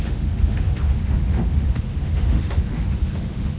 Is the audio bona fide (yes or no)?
no